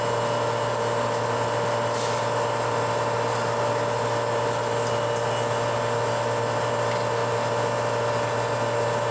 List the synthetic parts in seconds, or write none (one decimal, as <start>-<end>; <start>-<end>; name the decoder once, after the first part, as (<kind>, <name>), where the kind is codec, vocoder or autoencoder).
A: none